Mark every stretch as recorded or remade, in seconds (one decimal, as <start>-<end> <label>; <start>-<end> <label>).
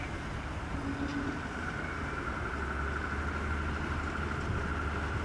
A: 0.0-1.1 recorded; 1.1-2.5 remade; 2.5-5.2 recorded